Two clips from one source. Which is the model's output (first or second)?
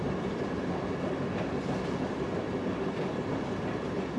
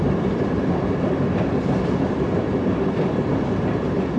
second